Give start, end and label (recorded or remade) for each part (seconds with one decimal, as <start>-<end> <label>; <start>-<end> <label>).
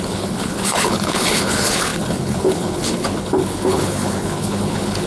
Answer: 0.0-5.1 remade